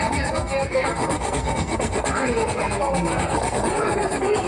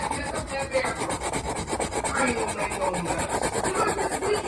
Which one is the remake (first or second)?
first